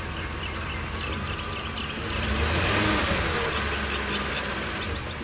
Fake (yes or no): no